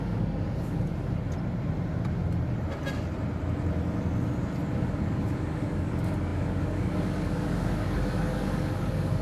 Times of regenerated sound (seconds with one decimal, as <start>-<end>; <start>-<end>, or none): 0.0-0.9; 4.7-9.2